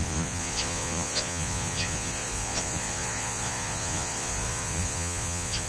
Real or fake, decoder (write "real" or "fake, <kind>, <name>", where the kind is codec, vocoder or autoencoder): fake, vocoder, Vocos